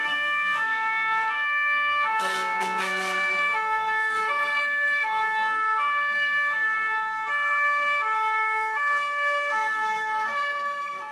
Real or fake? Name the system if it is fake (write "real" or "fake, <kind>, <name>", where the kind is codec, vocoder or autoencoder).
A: fake, codec, SNAC